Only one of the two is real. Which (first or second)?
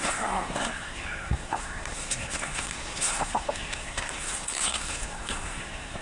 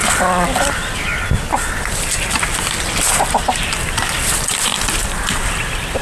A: second